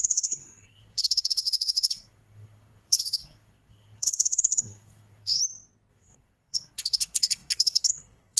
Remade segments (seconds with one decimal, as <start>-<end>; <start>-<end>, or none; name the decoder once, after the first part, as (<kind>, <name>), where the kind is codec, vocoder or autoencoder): 0.0-5.4 (codec, SNAC); 5.9-8.4

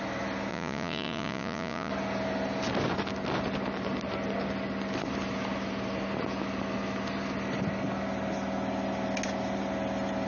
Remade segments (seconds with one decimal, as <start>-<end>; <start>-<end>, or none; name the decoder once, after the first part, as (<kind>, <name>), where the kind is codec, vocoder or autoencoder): 0.5-1.9 (vocoder, Vocos)

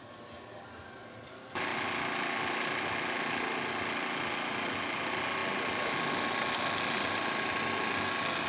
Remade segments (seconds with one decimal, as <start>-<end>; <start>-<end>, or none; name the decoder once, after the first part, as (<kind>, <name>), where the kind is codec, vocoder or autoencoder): none

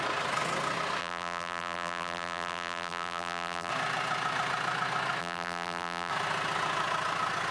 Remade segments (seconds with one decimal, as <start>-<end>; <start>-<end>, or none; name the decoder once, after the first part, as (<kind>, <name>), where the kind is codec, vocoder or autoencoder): 1.0-3.7 (vocoder, BigVGAN v2); 5.2-6.1